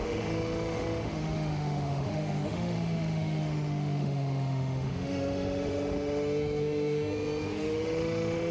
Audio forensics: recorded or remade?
remade